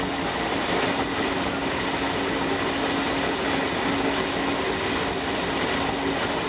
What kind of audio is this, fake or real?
real